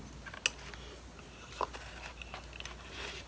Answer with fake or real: real